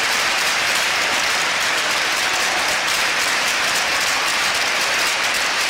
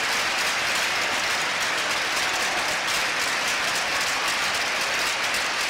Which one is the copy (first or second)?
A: first